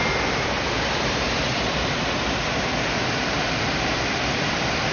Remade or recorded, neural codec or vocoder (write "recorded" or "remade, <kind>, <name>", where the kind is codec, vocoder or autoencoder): recorded